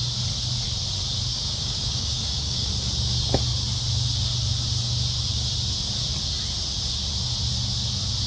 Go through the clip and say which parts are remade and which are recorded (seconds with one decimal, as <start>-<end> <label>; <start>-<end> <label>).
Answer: 0.0-1.3 recorded; 1.3-2.7 remade; 2.7-8.3 recorded